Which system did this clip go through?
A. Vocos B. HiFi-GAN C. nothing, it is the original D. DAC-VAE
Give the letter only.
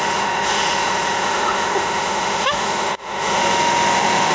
D